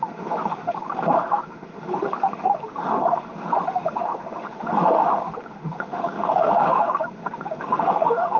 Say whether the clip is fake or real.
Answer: fake